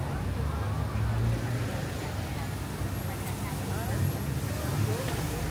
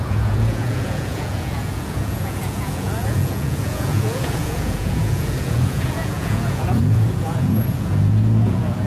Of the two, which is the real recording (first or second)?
first